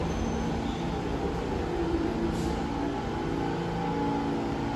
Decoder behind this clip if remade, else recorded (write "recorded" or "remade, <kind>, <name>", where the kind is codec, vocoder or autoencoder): recorded